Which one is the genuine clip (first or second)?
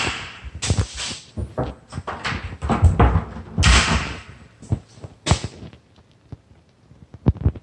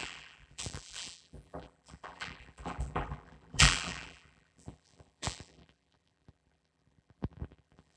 first